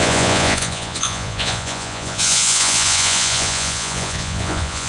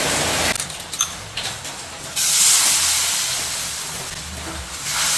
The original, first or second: second